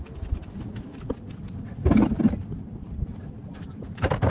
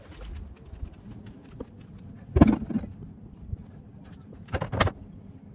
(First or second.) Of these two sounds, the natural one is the second